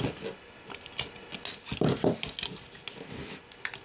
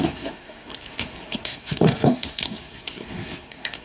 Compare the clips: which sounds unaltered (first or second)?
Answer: first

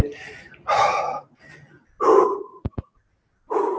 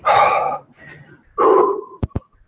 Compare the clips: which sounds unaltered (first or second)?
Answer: first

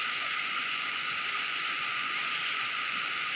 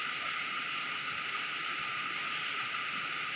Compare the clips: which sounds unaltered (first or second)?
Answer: second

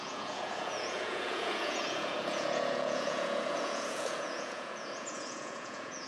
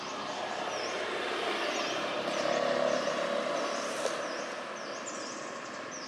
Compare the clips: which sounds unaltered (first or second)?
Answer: second